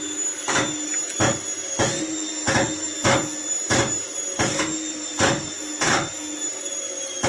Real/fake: real